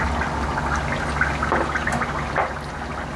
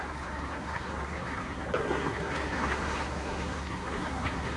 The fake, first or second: second